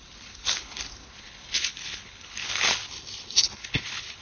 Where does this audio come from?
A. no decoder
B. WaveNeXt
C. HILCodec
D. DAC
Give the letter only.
C